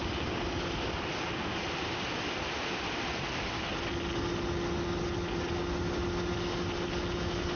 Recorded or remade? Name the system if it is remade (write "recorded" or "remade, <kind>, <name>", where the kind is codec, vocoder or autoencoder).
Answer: recorded